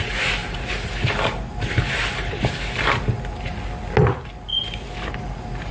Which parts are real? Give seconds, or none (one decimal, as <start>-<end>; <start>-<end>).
0.0-0.4; 3.0-5.7